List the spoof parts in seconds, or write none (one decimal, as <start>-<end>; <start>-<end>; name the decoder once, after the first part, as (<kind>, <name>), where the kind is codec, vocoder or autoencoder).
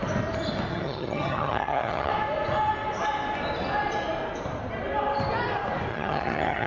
0.7-2.1 (vocoder, HiFi-GAN); 5.9-6.7